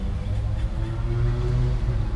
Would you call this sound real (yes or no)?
yes